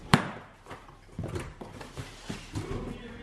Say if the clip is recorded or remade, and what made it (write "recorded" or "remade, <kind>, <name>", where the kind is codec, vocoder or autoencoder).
recorded